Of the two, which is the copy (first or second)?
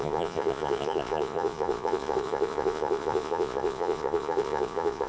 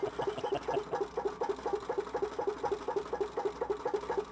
first